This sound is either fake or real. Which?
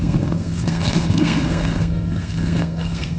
fake